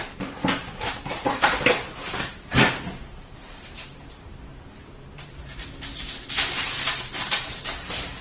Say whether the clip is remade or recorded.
remade